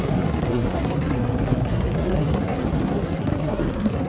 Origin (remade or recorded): remade